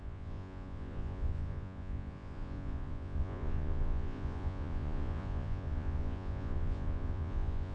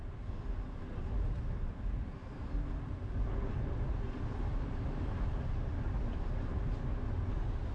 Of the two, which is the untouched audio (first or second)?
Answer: second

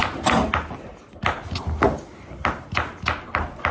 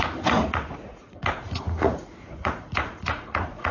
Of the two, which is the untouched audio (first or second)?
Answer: first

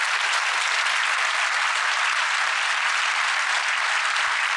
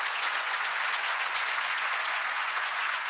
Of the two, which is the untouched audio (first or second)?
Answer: first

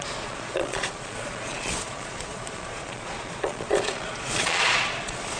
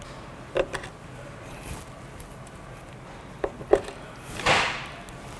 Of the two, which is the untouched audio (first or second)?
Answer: second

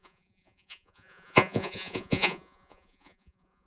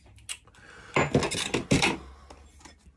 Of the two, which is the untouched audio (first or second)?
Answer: second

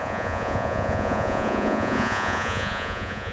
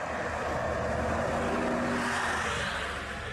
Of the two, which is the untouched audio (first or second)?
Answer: second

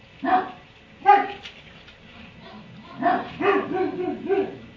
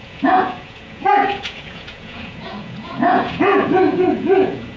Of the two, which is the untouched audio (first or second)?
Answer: first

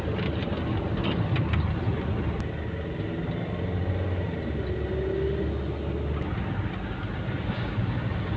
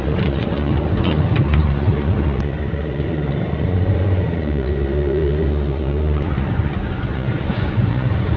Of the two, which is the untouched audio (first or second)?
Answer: first